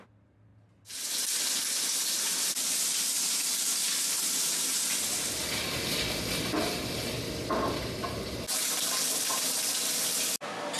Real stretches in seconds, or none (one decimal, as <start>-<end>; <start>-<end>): 0.0-10.8